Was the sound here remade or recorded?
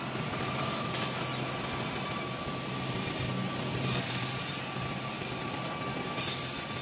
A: recorded